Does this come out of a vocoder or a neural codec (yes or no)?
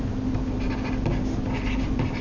no